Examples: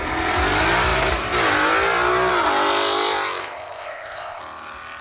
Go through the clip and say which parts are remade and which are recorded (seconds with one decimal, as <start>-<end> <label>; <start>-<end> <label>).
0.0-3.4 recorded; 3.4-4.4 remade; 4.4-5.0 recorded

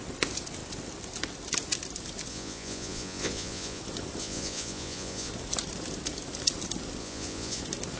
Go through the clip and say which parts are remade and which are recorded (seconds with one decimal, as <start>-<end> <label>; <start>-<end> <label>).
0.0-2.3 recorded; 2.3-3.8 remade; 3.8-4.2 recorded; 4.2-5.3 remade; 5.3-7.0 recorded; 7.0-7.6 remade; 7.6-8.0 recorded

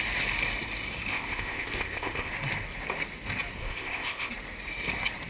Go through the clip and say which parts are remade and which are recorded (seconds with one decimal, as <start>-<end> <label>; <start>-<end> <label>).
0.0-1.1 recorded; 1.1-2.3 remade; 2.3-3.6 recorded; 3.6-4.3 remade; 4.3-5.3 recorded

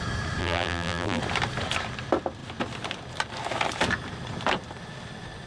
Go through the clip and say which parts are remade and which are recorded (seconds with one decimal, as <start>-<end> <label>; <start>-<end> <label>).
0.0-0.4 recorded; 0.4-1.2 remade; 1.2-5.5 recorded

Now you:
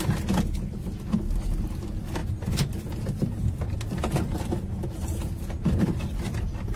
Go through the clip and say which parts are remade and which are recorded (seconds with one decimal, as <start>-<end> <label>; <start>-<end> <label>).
0.0-6.8 recorded

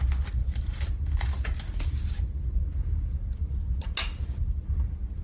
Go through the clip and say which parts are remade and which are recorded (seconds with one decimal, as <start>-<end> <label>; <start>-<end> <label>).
0.0-0.4 recorded; 0.4-3.5 remade; 3.5-5.2 recorded

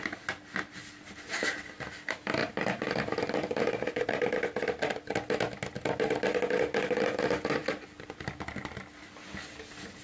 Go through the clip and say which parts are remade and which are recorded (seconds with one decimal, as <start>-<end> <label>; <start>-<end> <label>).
0.0-2.4 recorded; 2.4-4.3 remade; 4.3-10.0 recorded

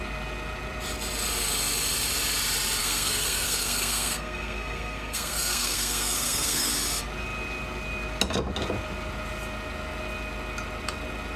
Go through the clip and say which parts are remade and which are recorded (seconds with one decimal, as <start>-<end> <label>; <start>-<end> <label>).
0.0-2.8 recorded; 2.8-6.7 remade; 6.7-11.4 recorded